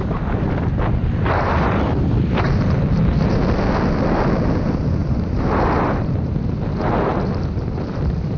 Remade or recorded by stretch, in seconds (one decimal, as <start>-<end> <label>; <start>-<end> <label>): 0.0-1.0 recorded; 1.0-3.1 remade; 3.1-5.0 recorded; 5.0-6.2 remade; 6.2-7.1 recorded; 7.1-8.4 remade